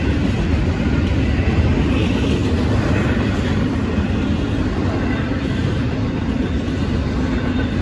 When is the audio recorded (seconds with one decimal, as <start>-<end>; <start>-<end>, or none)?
0.0-7.8